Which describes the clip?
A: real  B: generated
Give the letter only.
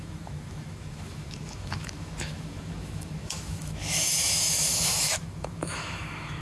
B